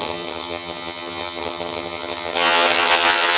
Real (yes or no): no